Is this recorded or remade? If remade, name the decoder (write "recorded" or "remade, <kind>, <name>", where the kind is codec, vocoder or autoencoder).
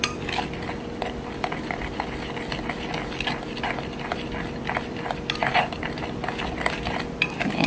remade, vocoder, BigVGAN v2